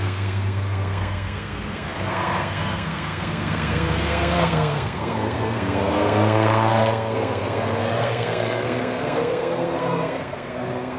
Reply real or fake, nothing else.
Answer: fake